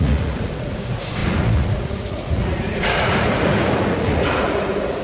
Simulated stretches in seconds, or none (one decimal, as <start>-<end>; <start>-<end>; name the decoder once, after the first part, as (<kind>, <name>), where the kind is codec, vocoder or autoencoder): 0.0-5.0 (vocoder, Vocos)